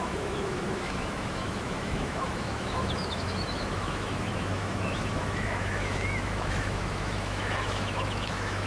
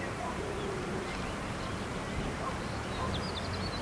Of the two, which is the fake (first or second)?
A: first